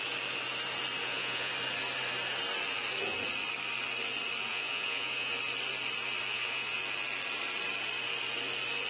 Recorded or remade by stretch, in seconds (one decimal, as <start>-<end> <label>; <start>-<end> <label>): 0.0-1.0 recorded; 1.0-1.5 remade; 1.5-4.5 recorded; 4.5-5.4 remade; 5.4-6.3 recorded; 6.3-6.8 remade; 6.8-8.9 recorded